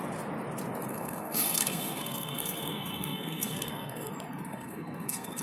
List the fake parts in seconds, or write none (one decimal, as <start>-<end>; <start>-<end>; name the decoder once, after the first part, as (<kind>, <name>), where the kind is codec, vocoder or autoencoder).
0.9-4.1 (codec, SNAC); 4.5-5.4